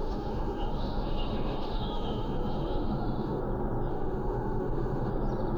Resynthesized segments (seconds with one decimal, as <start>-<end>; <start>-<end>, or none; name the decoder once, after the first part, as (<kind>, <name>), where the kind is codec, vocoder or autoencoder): 0.0-3.4 (autoencoder, DAC-VAE); 3.9-5.1